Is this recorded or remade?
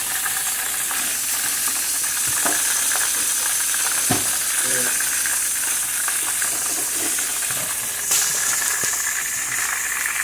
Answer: remade